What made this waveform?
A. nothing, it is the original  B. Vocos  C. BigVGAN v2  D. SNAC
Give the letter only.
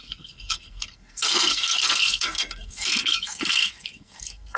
D